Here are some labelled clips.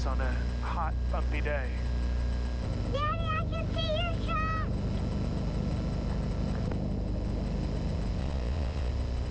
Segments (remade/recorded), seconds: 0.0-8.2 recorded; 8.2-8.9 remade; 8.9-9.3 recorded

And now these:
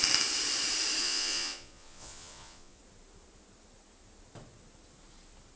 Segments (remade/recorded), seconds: 0.0-1.0 recorded; 1.0-2.8 remade; 2.8-5.6 recorded

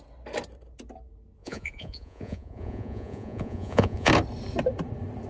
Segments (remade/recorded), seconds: 0.0-1.4 recorded; 1.4-4.1 remade; 4.1-5.3 recorded

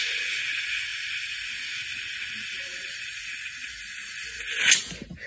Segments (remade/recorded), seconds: 0.0-5.3 recorded